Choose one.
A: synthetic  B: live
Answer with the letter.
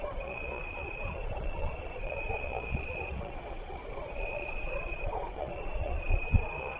A